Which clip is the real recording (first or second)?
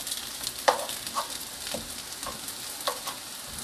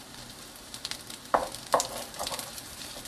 first